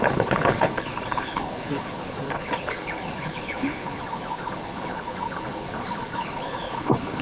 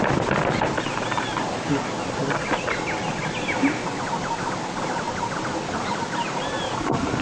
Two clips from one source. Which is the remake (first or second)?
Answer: first